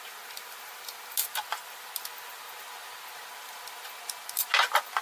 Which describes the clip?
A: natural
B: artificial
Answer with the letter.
A